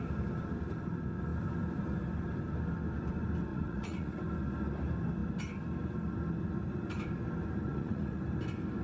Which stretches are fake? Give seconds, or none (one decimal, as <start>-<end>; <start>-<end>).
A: 3.5-4.2; 7.7-8.2

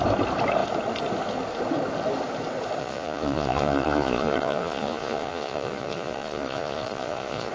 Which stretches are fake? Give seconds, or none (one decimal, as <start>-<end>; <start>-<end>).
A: 2.8-7.5

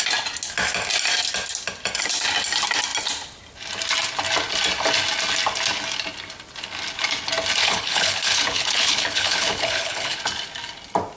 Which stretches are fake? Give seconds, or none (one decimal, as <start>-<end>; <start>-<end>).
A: 7.6-10.2

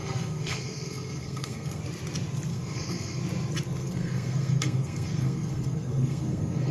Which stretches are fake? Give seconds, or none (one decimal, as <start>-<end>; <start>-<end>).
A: 0.0-1.8; 2.5-3.2; 3.8-6.7

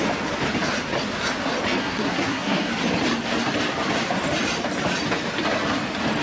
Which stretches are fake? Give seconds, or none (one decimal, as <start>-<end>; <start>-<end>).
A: 1.8-2.7

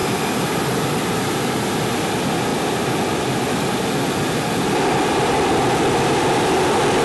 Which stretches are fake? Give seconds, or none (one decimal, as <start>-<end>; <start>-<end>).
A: none

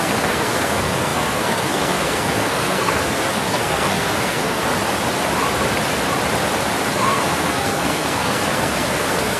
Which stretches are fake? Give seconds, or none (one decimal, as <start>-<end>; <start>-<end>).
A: 0.0-4.7; 6.9-9.4

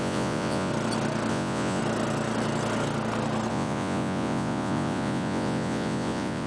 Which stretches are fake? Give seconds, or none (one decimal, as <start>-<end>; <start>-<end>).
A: 0.0-0.7; 1.3-1.8; 3.5-6.5